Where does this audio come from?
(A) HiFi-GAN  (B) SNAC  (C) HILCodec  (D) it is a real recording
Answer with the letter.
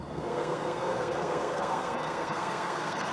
B